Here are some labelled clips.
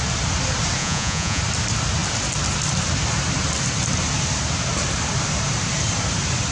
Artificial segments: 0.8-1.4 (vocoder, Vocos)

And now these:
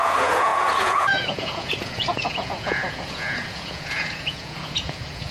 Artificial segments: 0.0-5.3 (vocoder, Vocos)